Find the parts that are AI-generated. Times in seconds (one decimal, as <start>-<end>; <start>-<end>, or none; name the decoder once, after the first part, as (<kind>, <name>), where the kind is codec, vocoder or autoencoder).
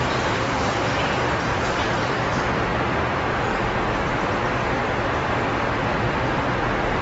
0.0-7.0 (vocoder, BigVGAN v2)